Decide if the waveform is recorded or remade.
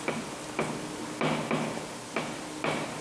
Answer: recorded